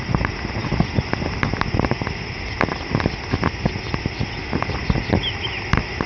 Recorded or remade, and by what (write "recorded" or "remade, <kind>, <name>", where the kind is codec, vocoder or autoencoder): recorded